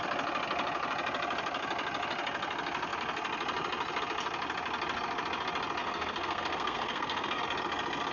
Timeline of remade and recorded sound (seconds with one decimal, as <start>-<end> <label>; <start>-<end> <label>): 0.0-5.8 recorded; 5.8-7.4 remade; 7.4-8.1 recorded